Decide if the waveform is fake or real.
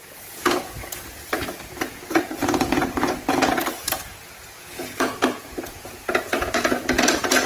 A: fake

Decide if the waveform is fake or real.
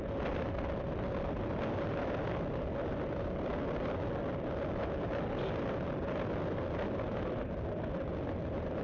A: real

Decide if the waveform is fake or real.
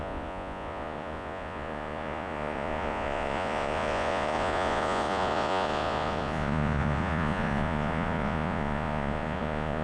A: fake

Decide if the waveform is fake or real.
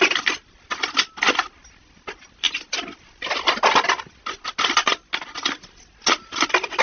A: real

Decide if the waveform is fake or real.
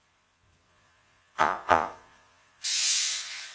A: fake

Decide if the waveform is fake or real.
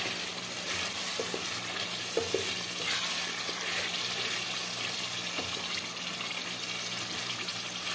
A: real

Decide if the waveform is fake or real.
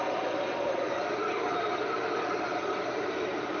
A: real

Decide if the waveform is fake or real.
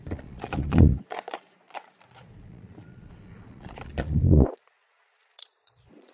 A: fake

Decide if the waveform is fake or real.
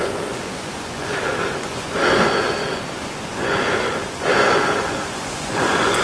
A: fake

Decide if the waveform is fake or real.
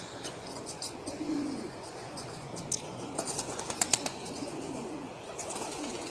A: fake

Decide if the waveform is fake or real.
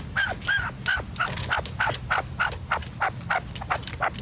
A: real